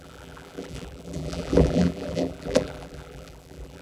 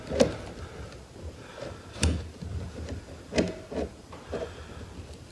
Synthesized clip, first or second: first